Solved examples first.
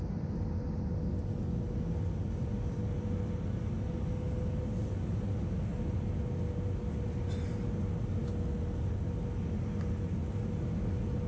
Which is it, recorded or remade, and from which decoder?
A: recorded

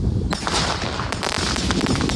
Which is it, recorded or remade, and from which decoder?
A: recorded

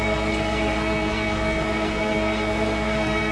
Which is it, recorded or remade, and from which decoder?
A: remade, codec, SNAC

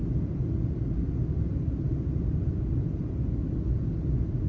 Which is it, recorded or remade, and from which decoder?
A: recorded